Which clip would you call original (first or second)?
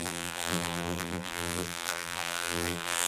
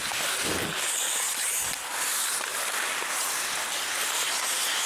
second